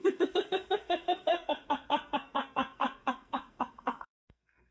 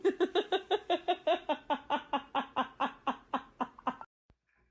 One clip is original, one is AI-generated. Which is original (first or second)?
second